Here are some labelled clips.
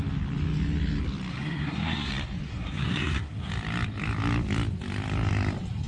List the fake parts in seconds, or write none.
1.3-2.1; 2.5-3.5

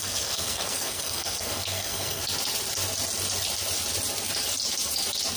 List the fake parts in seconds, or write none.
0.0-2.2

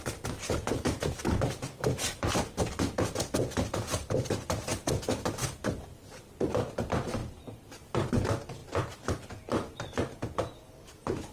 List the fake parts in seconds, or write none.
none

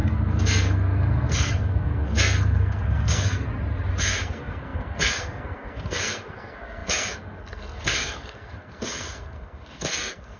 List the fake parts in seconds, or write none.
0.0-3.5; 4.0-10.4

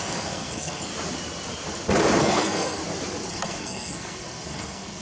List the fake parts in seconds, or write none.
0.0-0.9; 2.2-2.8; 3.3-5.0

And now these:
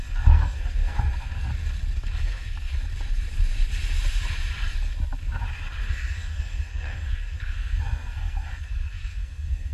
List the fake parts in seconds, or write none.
0.0-1.5; 2.2-2.7; 5.8-9.7

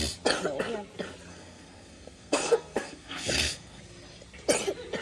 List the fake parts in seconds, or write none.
1.3-3.8

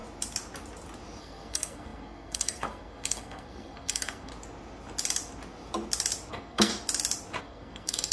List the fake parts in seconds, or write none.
1.2-4.3; 6.3-6.7; 7.4-8.1